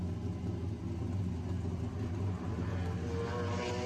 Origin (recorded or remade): recorded